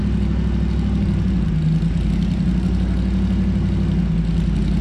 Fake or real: real